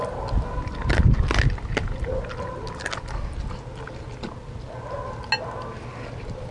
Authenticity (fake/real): real